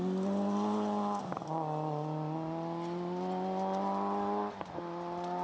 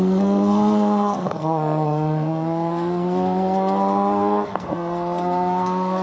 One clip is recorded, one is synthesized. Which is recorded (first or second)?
first